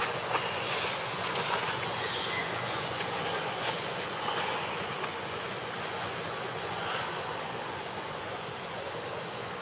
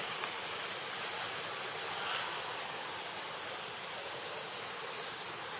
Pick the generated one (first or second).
first